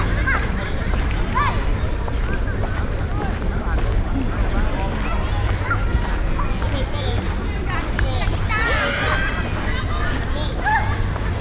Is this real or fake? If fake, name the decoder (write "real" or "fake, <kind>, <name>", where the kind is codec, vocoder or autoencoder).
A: real